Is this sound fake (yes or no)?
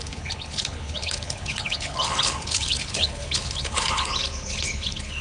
yes